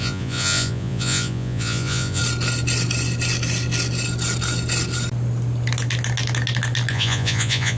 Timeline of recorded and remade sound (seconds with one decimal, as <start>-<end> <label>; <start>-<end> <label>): 0.0-2.2 remade; 2.2-6.9 recorded; 6.9-7.8 remade

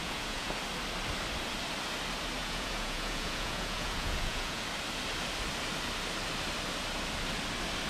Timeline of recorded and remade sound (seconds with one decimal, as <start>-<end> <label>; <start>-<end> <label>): 0.0-0.5 remade; 0.5-2.4 recorded; 2.4-4.6 remade; 4.6-7.9 recorded